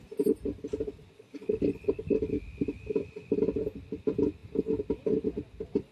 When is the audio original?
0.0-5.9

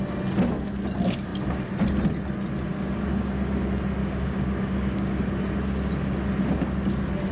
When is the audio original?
0.0-2.7; 3.6-4.0; 5.2-7.3

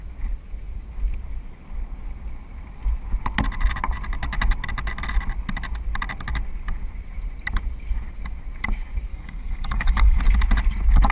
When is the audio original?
0.0-9.1; 10.2-11.1

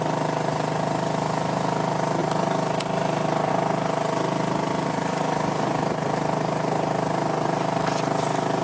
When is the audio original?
0.0-8.6

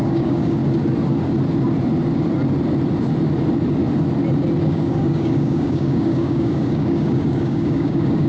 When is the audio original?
0.6-4.6

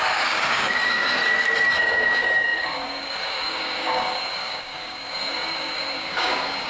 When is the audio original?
1.2-1.8

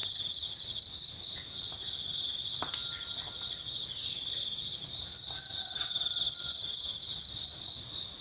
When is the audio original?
0.0-8.2

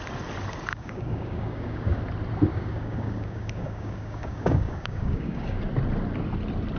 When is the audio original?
0.0-0.7; 2.0-2.5; 5.6-6.8